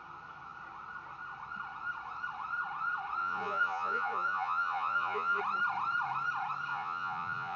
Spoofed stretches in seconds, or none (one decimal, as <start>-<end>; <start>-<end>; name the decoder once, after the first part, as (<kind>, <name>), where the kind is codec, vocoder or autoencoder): 3.2-5.4 (vocoder, Vocos); 6.7-7.6